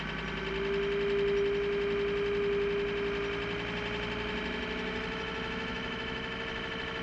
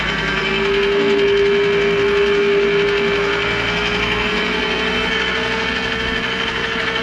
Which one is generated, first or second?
second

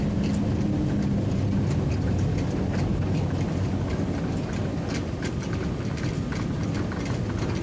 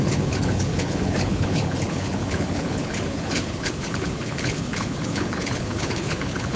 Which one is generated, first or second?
second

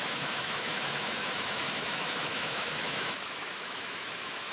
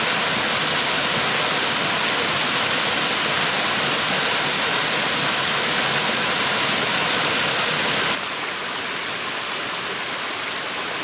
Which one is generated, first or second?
first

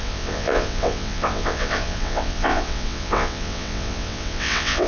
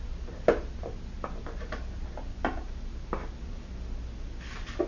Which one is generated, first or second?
first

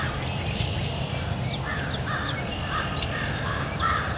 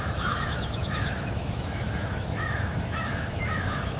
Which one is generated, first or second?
second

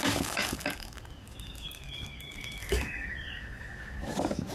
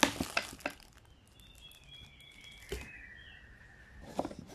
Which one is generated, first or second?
first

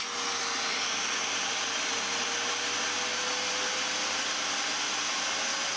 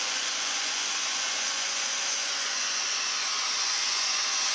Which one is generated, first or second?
second